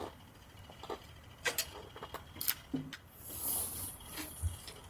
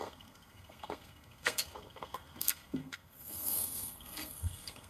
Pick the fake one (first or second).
second